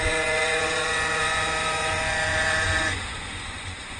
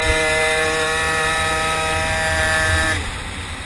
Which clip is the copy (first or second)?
first